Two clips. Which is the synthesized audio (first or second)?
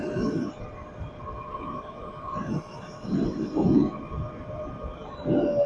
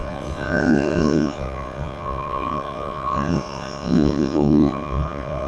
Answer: second